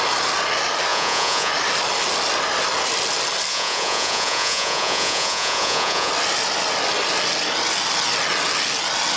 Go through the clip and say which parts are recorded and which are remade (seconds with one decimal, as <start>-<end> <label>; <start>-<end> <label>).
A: 0.0-0.9 recorded; 0.9-1.5 remade; 1.5-3.5 recorded; 3.5-6.1 remade; 6.1-9.2 recorded